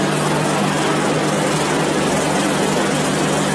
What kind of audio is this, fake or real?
real